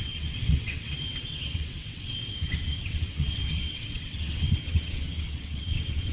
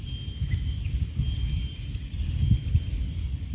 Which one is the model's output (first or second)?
first